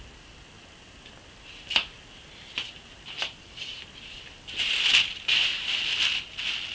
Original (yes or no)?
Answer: yes